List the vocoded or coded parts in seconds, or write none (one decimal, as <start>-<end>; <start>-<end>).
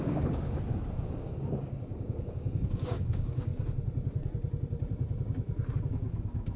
0.0-3.5; 5.7-6.6